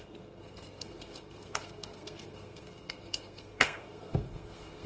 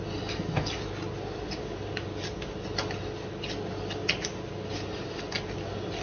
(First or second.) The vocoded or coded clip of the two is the first